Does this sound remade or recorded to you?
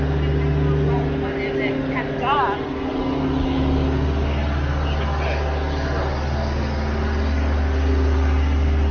recorded